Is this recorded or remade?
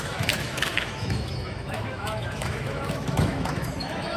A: remade